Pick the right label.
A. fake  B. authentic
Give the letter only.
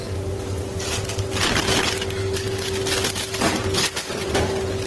B